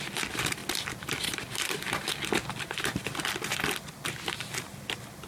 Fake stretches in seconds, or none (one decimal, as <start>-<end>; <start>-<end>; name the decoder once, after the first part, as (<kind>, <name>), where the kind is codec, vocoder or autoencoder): none